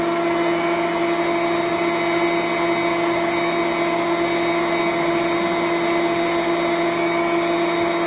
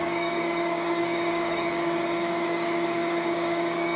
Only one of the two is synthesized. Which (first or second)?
second